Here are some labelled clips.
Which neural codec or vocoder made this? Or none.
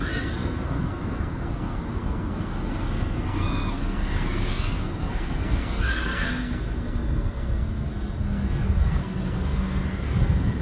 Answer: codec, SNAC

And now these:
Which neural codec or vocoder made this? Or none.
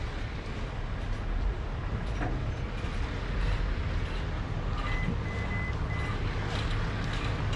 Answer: none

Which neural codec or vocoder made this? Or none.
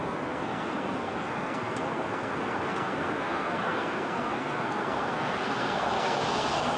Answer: codec, SNAC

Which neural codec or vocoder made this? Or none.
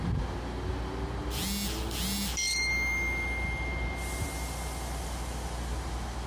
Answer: none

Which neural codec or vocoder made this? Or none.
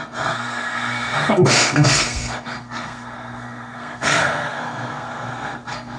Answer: codec, SNAC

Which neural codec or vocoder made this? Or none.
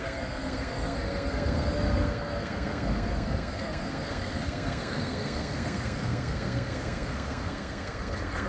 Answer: codec, SNAC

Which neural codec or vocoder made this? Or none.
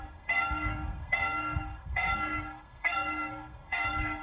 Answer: codec, SNAC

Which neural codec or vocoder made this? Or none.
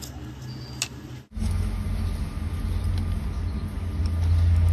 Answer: none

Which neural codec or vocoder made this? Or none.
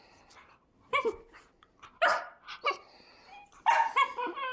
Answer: none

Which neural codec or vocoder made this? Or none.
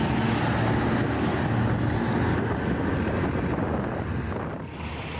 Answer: none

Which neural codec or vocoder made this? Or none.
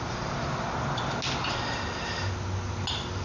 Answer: none